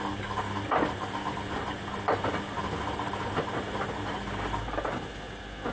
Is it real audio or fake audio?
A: real